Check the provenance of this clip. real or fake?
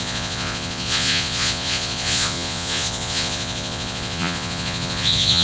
fake